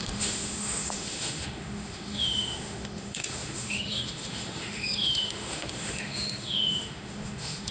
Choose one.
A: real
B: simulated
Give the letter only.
B